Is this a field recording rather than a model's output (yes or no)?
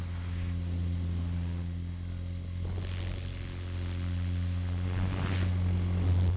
yes